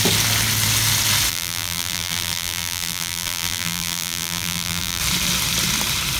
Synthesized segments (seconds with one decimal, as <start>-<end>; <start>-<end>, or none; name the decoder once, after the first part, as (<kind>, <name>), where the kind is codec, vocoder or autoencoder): 1.3-5.0 (vocoder, BigVGAN v2)